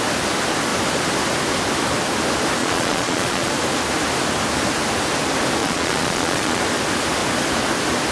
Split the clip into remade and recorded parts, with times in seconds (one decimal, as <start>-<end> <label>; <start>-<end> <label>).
0.0-2.6 recorded; 2.6-3.5 remade; 3.5-5.6 recorded; 5.6-6.6 remade; 6.6-8.1 recorded